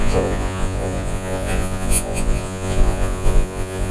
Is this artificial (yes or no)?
yes